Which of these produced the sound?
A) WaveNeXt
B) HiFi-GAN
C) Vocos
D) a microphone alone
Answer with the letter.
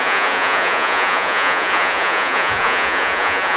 C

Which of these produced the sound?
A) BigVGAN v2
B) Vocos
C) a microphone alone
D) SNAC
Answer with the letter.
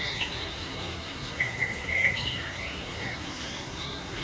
D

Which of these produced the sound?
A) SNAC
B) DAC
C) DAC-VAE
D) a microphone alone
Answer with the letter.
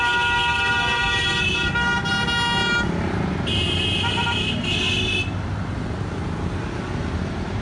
D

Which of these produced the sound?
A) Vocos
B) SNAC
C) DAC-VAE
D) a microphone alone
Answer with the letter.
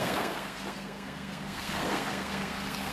B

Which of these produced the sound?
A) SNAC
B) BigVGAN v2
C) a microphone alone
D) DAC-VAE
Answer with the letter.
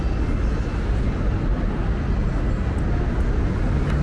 C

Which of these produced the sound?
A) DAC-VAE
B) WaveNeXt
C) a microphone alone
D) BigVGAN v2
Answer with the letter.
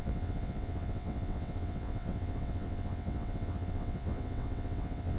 B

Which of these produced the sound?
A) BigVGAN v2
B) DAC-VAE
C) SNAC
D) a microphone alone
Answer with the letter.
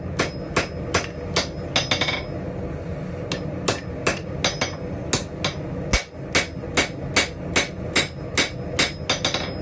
D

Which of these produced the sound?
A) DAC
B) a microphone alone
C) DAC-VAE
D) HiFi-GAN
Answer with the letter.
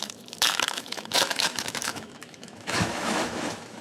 C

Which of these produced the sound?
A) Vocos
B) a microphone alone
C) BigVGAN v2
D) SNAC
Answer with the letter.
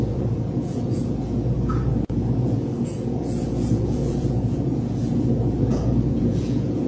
A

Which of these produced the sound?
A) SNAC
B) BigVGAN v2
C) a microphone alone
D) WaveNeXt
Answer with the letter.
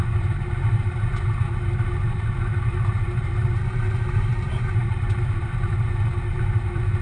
B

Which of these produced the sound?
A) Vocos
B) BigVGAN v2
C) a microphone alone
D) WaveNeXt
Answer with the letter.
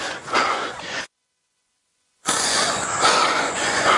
A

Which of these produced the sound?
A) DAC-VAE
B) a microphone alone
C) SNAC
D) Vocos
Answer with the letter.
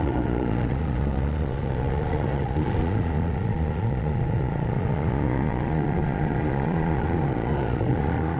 D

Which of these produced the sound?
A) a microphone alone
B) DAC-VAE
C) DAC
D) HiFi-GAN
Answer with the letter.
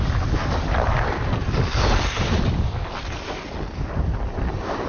A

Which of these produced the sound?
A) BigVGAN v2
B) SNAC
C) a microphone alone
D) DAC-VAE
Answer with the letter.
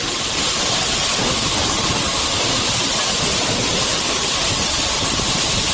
A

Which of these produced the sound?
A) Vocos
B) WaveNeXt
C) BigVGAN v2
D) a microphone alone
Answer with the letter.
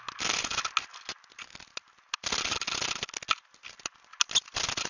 D